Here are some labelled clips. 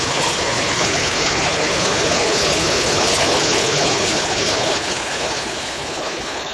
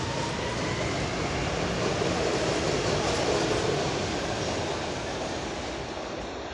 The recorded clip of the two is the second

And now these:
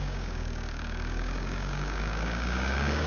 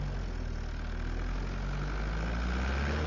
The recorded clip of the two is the second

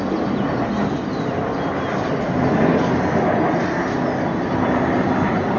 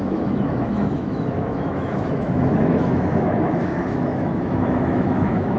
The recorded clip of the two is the first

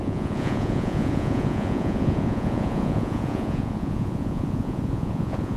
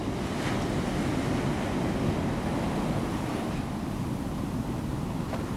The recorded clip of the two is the second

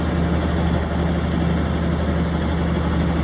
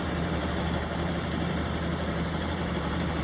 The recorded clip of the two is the first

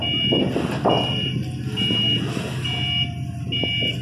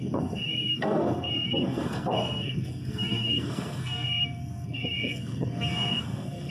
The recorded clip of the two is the first